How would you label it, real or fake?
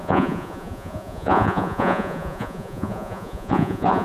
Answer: fake